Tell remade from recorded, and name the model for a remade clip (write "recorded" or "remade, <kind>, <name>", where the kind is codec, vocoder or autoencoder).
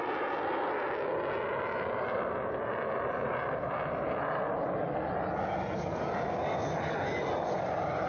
recorded